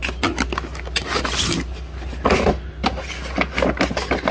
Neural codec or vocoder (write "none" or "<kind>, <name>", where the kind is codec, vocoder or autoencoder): none